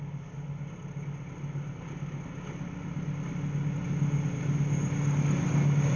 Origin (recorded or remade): recorded